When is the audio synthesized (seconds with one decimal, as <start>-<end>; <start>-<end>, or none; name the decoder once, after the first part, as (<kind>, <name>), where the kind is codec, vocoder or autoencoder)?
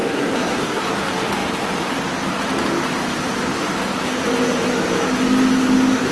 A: 0.0-0.8 (codec, SNAC)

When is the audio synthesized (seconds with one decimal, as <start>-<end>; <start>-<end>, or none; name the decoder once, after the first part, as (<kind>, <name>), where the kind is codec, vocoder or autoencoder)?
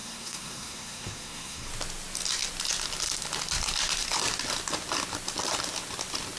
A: 0.0-1.7 (codec, SNAC)